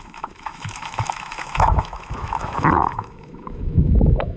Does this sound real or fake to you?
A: fake